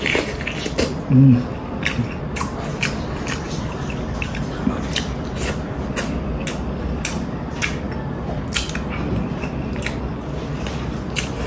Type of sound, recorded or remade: recorded